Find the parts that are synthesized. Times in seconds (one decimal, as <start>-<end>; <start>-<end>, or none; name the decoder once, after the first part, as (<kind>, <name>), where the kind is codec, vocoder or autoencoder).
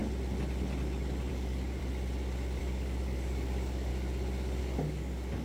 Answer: 1.3-1.8 (codec, DAC); 2.6-3.9; 4.6-5.4